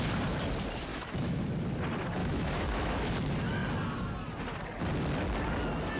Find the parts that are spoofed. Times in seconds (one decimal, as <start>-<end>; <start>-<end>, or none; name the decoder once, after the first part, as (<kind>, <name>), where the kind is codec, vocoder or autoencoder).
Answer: 0.9-1.4 (autoencoder, DAC-VAE); 2.2-3.1